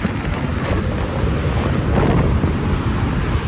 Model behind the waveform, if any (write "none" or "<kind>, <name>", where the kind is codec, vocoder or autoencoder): none